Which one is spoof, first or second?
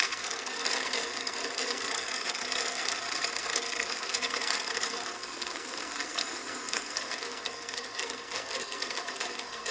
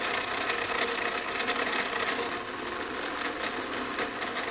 first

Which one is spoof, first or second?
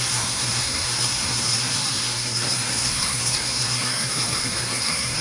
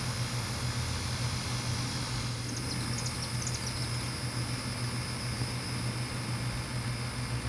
first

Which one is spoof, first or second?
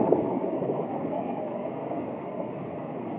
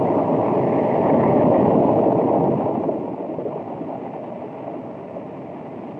first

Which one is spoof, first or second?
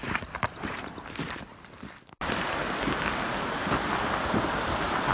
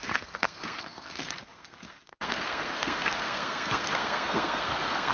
second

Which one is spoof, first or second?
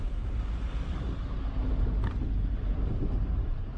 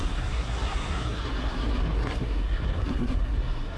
second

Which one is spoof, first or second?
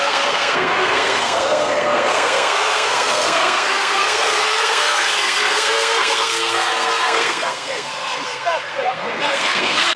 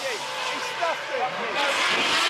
first